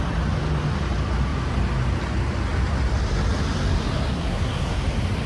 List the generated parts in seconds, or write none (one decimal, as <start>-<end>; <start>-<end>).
4.1-4.8

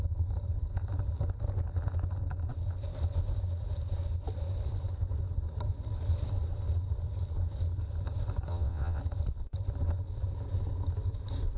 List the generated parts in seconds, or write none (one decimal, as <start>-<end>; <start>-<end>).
8.5-9.0

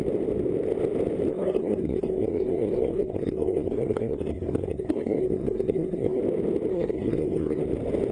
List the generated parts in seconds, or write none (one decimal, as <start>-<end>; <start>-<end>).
1.3-6.2; 6.7-7.6

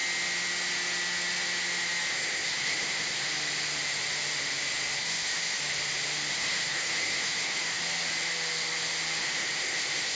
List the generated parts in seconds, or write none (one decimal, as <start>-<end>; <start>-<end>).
2.1-3.3; 5.0-5.6; 6.3-7.8; 9.2-10.1

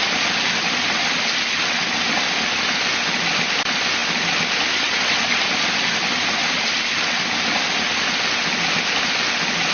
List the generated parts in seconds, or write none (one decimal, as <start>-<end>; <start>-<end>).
none

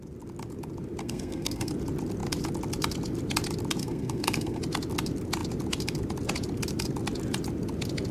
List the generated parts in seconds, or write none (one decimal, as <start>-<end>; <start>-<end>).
1.0-1.7; 3.8-4.6

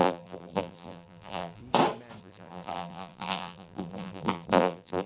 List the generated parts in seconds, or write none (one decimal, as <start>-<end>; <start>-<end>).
0.0-1.6; 2.2-5.1

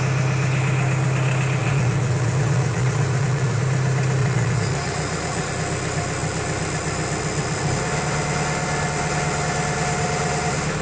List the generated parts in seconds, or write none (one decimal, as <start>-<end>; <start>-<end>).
1.6-3.6; 4.2-5.5